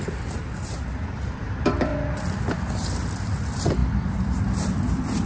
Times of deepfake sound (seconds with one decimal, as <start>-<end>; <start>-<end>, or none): 0.0-1.9; 2.7-5.3